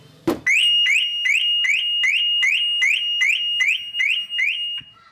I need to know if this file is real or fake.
real